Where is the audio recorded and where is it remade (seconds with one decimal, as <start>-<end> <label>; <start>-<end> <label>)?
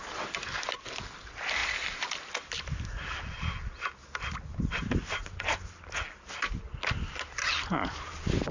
0.0-8.5 recorded